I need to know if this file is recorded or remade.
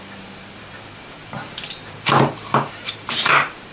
remade